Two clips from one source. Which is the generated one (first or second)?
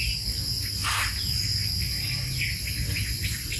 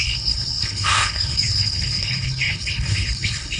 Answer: second